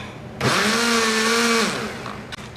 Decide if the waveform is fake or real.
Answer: real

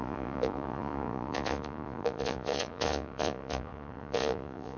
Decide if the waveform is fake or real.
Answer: fake